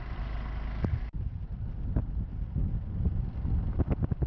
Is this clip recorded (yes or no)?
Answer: yes